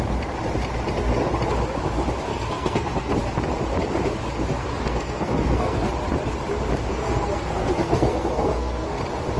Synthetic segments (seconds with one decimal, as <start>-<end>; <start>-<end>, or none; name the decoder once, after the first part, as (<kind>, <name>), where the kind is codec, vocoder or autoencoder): 2.3-3.1 (codec, SNAC); 4.6-5.9; 6.9-9.0